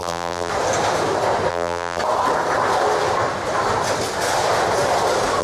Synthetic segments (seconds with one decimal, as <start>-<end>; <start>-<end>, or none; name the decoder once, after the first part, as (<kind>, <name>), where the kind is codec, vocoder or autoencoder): 0.0-0.5 (vocoder, BigVGAN v2); 1.5-2.0